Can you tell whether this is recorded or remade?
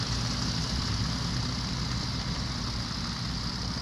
recorded